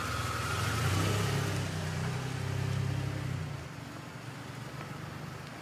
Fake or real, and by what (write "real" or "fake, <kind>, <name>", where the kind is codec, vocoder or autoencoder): real